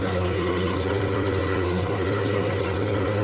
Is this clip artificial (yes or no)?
yes